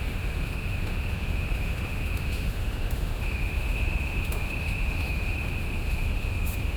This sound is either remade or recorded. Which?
remade